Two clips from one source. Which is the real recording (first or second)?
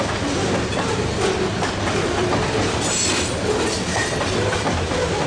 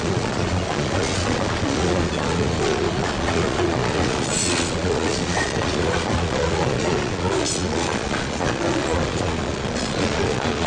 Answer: first